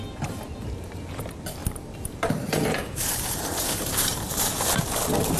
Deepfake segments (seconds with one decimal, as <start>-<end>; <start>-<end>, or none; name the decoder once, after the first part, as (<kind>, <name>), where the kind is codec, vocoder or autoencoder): 1.6-4.8 (vocoder, BigVGAN v2)